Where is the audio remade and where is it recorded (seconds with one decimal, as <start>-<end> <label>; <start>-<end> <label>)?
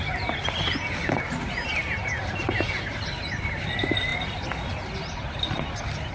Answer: 0.0-6.1 recorded